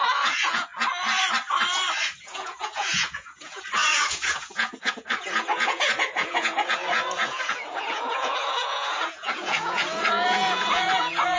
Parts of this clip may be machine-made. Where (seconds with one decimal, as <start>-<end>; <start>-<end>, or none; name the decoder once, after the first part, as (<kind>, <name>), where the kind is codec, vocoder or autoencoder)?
0.0-0.7 (vocoder, Vocos); 2.2-11.4